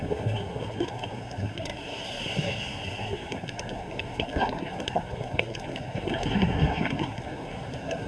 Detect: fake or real fake